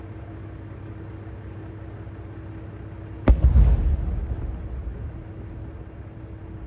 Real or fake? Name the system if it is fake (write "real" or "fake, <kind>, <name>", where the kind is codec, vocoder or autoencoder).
real